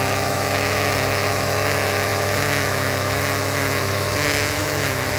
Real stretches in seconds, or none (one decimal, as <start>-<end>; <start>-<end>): none